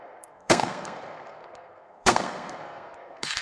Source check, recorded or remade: remade